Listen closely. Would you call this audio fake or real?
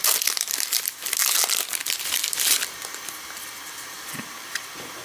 real